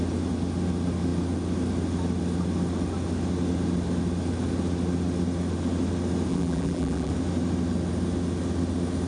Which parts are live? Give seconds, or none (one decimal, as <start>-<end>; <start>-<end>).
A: 0.0-6.3; 7.1-9.1